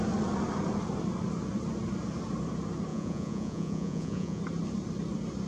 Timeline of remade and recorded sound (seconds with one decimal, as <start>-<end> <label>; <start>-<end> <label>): 0.0-2.9 recorded; 2.9-4.4 remade; 4.4-5.5 recorded